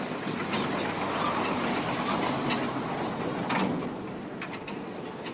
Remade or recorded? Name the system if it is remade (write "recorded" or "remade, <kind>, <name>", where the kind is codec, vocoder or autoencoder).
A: recorded